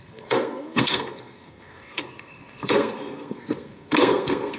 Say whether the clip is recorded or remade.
remade